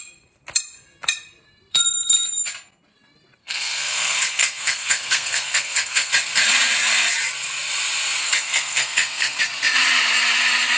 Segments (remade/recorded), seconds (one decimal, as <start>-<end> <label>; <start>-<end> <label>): 0.0-3.4 recorded; 3.4-6.1 remade; 6.1-8.2 recorded; 8.2-9.4 remade; 9.4-10.8 recorded